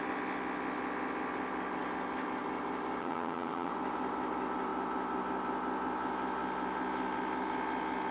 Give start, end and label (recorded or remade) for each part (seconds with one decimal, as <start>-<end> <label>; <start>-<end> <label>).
0.0-3.0 recorded; 3.0-3.7 remade; 3.7-8.1 recorded